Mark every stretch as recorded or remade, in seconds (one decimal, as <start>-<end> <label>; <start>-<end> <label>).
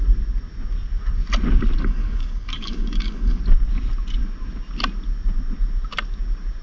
0.0-1.8 recorded; 1.8-3.4 remade; 3.4-6.6 recorded